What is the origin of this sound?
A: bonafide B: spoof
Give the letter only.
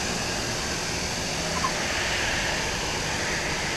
A